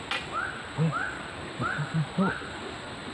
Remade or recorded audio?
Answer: recorded